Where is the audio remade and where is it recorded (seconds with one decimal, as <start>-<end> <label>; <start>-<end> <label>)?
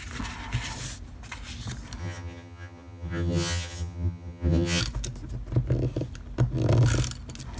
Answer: 0.0-2.0 recorded; 2.0-4.8 remade; 4.8-7.6 recorded